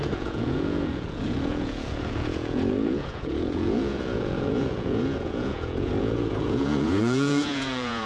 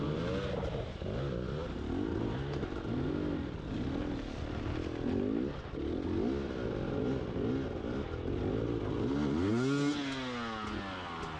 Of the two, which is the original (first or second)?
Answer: second